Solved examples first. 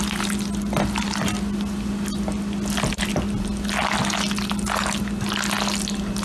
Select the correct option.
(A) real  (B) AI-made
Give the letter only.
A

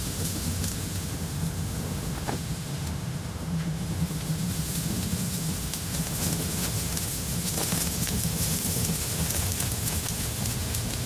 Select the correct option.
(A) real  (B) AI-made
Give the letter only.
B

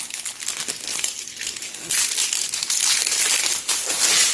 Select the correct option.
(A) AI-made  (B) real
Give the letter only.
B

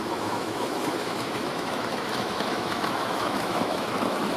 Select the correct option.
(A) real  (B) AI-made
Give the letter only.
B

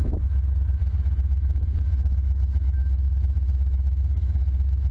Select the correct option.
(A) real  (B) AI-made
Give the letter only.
B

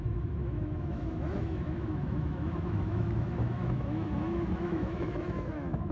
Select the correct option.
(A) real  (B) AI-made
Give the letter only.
B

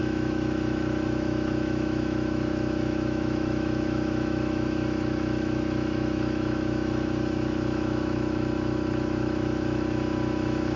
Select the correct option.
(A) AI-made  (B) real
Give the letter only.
A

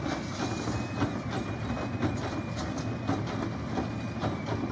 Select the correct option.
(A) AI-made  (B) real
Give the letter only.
B